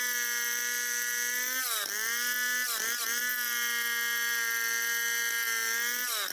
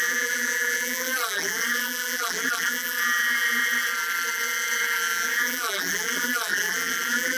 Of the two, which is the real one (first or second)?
first